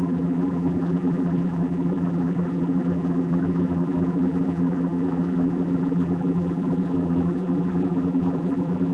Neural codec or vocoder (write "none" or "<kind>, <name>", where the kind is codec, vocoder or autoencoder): vocoder, BigVGAN v2